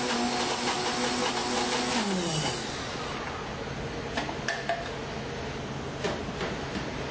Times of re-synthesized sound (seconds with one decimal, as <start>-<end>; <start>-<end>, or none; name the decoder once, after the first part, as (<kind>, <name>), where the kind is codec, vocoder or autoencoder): none

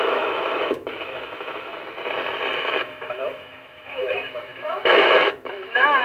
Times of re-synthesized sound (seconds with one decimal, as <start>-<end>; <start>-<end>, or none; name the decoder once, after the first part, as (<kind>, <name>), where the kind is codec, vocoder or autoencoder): 0.0-1.7 (autoencoder, DAC-VAE); 2.6-6.0